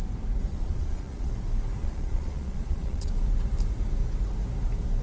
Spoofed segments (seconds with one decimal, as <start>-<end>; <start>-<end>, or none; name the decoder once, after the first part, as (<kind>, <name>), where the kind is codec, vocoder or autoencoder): 0.5-1.3 (vocoder, Vocos); 1.8-3.1